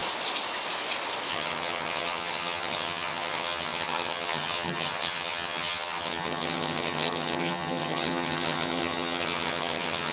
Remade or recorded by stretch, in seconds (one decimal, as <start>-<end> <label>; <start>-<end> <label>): 0.0-1.3 recorded; 1.3-10.1 remade